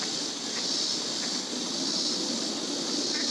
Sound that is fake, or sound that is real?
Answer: real